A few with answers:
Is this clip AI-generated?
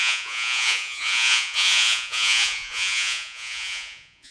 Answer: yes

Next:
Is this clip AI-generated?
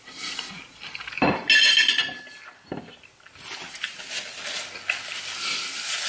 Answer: no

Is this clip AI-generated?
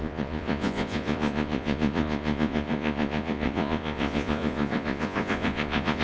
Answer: yes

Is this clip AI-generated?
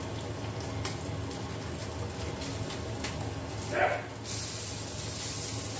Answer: no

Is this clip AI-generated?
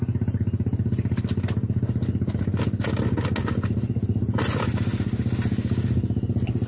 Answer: no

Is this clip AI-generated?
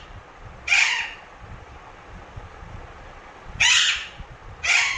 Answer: yes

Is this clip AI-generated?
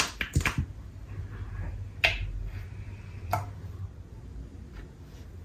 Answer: no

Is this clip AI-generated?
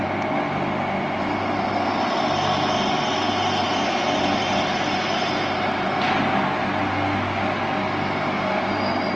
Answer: no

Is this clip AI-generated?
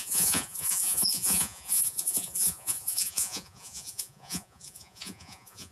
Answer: yes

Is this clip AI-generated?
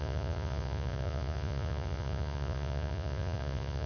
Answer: yes